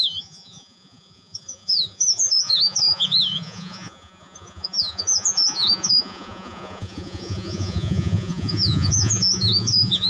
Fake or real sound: fake